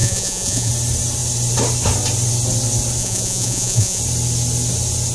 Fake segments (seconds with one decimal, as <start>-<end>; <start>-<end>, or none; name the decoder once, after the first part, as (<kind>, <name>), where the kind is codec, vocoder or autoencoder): 0.0-0.7 (vocoder, Vocos); 3.0-4.0

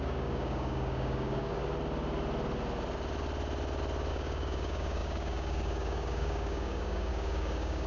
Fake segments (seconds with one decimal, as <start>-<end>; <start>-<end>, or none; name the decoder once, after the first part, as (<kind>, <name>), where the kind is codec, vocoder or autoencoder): 0.0-1.6 (codec, DAC); 4.1-7.9

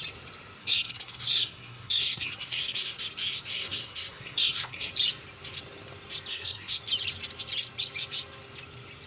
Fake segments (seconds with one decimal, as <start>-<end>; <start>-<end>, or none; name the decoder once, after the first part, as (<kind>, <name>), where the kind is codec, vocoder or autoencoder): 0.6-3.0 (codec, SNAC); 3.5-4.9; 6.3-6.8

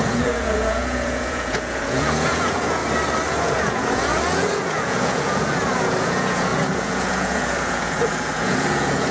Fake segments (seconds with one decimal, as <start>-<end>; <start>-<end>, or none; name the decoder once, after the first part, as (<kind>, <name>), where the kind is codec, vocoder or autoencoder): 0.0-2.8 (vocoder, Vocos); 3.3-9.1

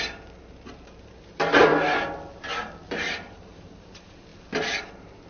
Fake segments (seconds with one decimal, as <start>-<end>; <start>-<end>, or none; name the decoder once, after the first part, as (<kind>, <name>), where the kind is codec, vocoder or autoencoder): 0.0-1.7 (vocoder, BigVGAN v2); 3.1-4.3; 4.8-5.3

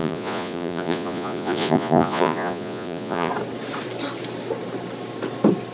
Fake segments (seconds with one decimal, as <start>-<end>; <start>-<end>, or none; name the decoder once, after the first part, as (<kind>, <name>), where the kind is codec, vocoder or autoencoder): 0.0-3.3 (vocoder, Vocos)

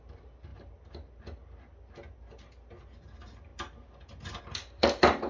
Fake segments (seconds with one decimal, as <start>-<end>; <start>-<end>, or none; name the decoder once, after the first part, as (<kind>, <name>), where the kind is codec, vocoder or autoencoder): none

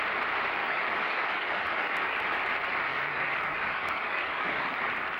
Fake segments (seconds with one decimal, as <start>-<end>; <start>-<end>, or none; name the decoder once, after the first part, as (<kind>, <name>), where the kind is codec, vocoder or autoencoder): 0.6-2.2 (codec, DAC); 2.9-4.8